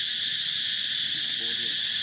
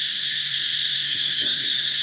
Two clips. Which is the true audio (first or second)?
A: first